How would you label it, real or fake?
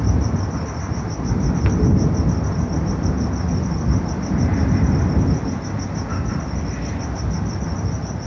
real